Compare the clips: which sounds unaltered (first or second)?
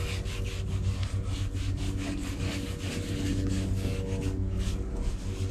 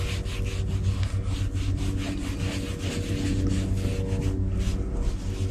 second